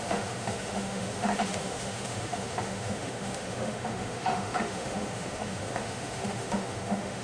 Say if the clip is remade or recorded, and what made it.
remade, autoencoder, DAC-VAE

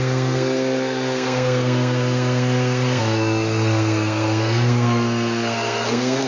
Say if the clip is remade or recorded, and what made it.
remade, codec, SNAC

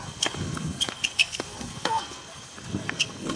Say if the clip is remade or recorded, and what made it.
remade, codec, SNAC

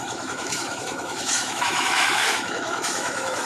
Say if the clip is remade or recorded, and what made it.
remade, autoencoder, DAC-VAE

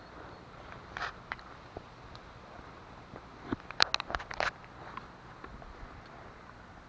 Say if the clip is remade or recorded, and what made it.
recorded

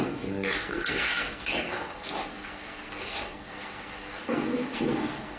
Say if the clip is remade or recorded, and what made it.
remade, codec, SNAC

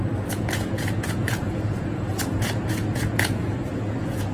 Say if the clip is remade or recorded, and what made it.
remade, vocoder, Vocos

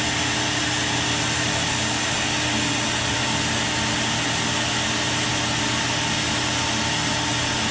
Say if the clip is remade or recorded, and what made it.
recorded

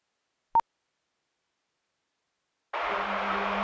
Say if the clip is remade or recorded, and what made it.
recorded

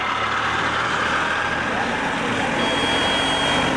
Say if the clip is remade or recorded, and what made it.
recorded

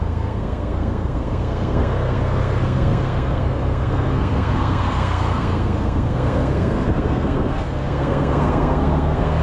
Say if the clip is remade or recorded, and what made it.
remade, codec, SNAC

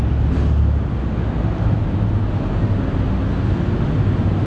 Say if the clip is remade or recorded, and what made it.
recorded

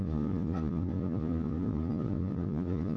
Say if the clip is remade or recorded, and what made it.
remade, vocoder, Vocos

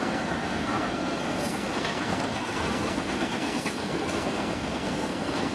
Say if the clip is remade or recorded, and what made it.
remade, codec, SNAC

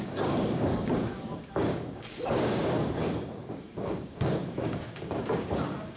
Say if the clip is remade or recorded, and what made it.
remade, codec, DAC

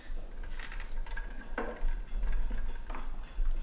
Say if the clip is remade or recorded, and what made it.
recorded